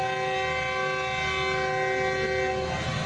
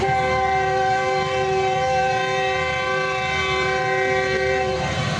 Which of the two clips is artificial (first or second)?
second